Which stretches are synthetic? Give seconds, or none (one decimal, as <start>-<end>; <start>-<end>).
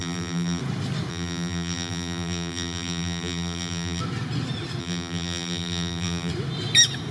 0.0-0.6; 1.1-4.0; 4.8-6.3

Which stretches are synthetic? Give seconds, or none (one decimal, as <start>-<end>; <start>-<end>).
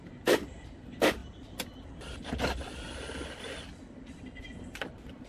0.0-1.2; 4.4-5.3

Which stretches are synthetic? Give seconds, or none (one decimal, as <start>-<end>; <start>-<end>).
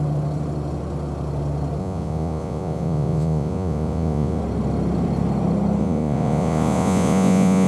1.8-4.4; 5.8-7.7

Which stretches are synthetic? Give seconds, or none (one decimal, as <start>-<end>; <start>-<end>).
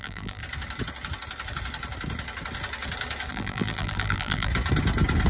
0.0-0.4; 3.3-4.5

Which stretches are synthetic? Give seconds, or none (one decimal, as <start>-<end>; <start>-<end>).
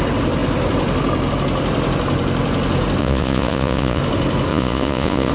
3.0-4.0; 4.5-5.3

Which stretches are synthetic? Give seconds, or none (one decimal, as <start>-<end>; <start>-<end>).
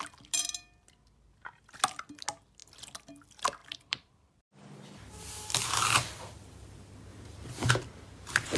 3.6-4.4; 7.1-7.7